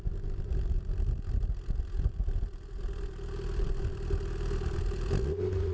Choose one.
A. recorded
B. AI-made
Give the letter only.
A